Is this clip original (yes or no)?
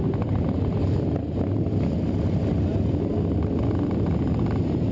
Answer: yes